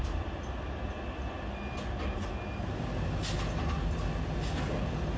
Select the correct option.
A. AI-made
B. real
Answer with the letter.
B